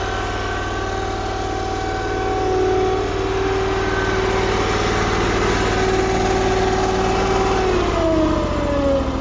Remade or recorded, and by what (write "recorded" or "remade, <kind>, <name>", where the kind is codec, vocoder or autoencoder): recorded